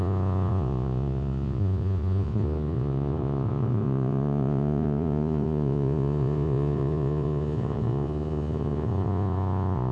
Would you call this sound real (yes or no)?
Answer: no